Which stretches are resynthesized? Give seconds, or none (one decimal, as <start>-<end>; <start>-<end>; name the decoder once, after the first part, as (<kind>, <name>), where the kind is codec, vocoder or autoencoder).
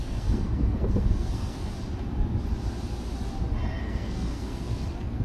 0.0-1.7 (codec, SNAC); 3.8-5.2